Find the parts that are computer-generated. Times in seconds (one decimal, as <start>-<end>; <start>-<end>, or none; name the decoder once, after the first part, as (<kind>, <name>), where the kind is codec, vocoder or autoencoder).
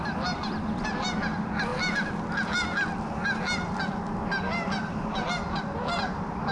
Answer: none